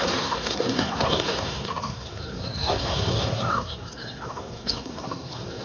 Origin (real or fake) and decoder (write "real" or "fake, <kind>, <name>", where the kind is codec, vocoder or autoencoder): fake, codec, SNAC